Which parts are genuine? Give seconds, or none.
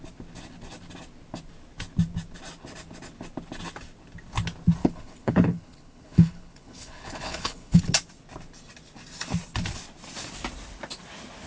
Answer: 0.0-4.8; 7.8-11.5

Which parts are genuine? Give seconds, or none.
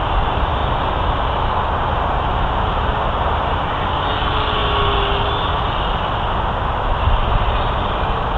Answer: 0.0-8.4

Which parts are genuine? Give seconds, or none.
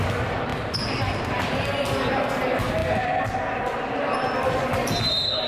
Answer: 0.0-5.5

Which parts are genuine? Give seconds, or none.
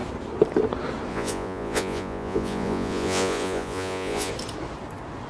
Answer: 0.0-1.1; 4.3-5.3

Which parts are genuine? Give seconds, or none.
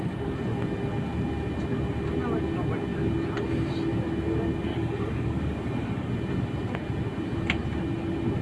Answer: 0.0-4.7; 6.1-8.4